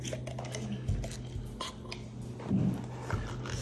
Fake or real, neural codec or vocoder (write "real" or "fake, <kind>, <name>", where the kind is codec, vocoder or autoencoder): real